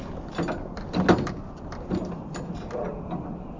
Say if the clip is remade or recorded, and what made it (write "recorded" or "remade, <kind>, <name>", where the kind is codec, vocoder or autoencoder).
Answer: recorded